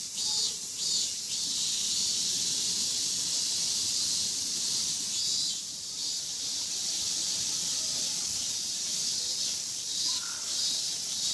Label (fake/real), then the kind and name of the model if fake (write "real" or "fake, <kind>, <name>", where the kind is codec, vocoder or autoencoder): fake, vocoder, BigVGAN v2